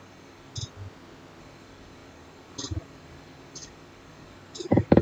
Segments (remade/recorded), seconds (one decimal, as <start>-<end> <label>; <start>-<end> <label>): 0.0-0.5 remade; 0.5-1.4 recorded; 1.4-5.0 remade